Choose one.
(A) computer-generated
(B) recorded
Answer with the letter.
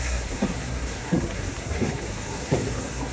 A